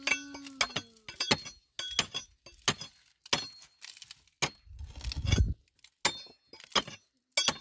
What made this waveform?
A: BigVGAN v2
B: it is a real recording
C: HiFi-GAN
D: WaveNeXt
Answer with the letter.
B